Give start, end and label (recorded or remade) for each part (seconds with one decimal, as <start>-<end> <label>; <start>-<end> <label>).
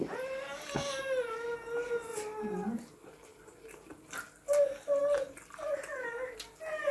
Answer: 0.0-6.9 recorded